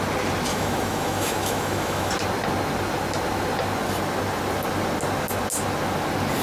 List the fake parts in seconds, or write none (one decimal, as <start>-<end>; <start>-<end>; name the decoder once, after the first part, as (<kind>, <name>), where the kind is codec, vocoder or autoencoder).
0.5-2.1 (autoencoder, DAC-VAE)